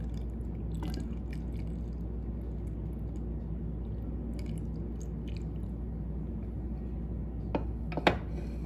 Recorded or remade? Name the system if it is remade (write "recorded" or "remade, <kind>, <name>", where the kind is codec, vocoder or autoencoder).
recorded